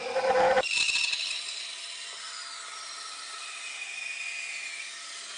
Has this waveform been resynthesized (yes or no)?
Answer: no